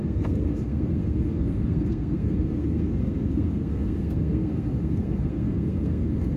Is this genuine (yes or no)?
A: no